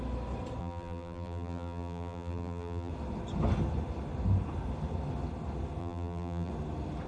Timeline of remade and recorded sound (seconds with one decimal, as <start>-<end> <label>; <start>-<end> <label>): 0.0-0.6 recorded; 0.6-2.9 remade; 2.9-5.8 recorded; 5.8-6.5 remade; 6.5-7.1 recorded